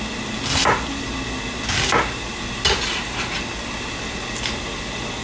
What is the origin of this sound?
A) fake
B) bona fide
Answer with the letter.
B